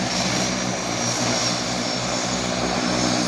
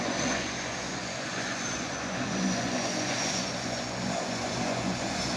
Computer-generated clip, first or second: second